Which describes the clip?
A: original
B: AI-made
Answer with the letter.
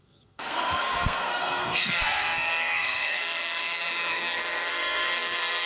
B